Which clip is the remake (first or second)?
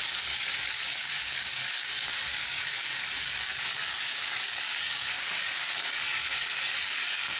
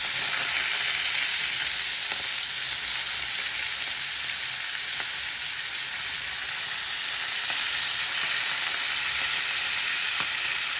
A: first